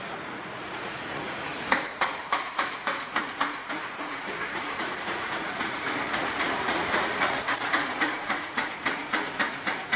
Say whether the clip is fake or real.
fake